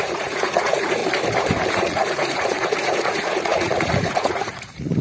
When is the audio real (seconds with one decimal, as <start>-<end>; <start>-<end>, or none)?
1.0-1.7